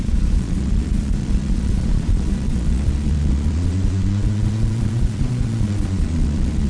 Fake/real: fake